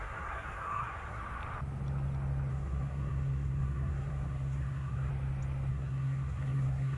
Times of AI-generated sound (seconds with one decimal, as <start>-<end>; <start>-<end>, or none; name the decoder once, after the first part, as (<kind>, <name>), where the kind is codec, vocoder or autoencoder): 0.0-1.2 (codec, SNAC); 2.5-5.1; 5.7-7.0